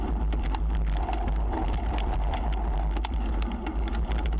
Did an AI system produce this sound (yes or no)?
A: no